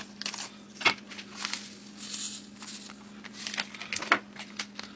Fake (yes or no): no